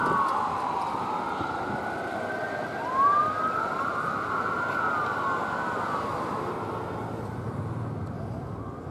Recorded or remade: recorded